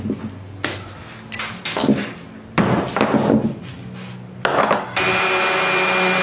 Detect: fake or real real